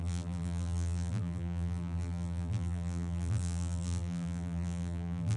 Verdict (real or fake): fake